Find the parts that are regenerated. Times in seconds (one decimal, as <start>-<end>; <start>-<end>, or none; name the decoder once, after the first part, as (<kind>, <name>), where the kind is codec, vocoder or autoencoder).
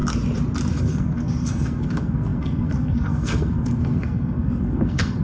0.8-5.2 (codec, SNAC)